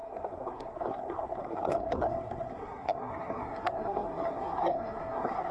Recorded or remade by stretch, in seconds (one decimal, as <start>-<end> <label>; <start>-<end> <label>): 0.0-5.5 remade